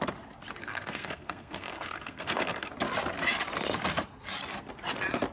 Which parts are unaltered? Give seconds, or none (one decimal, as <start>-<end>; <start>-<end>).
0.0-0.6; 2.7-5.3